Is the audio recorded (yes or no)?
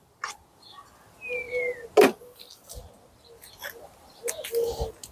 yes